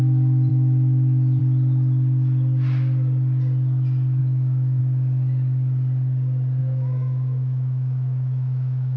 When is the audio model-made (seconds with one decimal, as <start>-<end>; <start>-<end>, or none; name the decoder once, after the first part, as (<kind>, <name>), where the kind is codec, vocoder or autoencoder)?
0.5-1.4 (autoencoder, DAC-VAE); 4.2-4.8; 6.6-9.0